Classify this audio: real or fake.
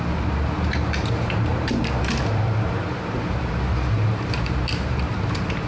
fake